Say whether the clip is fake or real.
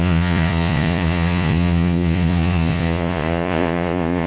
fake